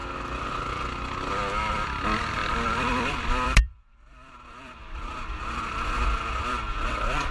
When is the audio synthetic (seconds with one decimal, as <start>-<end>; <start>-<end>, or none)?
1.7-7.3